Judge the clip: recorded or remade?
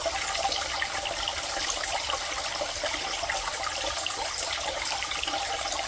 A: recorded